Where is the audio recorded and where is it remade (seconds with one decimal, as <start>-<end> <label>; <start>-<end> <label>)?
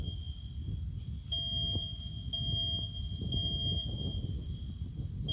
0.0-5.3 recorded